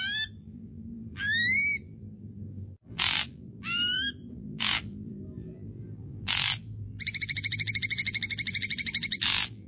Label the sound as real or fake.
fake